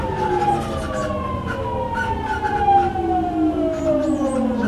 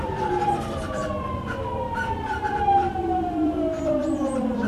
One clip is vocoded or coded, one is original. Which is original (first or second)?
first